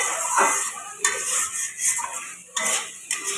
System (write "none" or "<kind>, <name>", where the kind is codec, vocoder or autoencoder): none